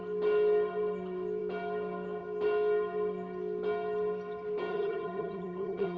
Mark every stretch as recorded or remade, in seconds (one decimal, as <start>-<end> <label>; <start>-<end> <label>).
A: 0.0-4.7 recorded; 4.7-6.0 remade